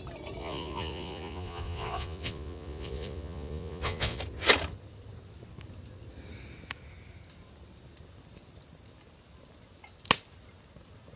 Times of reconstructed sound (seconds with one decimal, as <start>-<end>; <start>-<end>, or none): 0.4-4.2